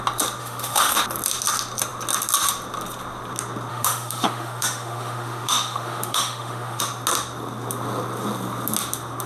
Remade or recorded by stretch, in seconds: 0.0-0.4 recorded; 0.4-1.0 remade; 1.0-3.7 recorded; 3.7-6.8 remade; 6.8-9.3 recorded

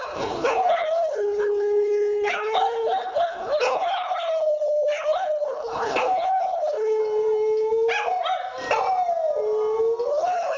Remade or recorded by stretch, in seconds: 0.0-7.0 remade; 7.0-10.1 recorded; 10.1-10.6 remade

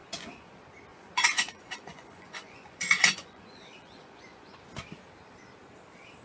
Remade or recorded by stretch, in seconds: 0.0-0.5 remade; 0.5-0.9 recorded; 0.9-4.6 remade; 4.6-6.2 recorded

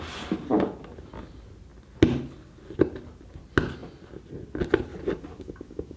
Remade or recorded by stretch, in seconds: 0.0-4.9 recorded; 4.9-6.0 remade

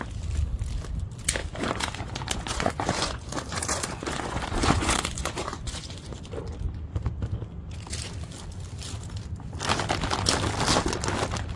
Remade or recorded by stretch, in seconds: 0.0-1.4 recorded; 1.4-6.3 remade; 6.3-11.6 recorded